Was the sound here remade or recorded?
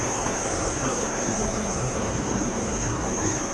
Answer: remade